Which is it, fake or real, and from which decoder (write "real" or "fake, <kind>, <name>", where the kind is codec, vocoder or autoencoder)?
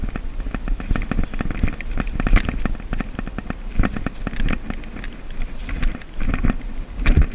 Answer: real